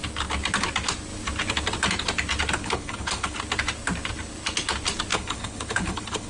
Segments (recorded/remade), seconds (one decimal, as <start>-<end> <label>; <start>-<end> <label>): 0.0-2.6 recorded; 2.6-3.4 remade; 3.4-5.1 recorded; 5.1-6.3 remade